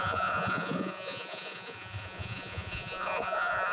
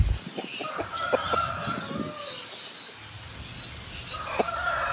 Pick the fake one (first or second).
first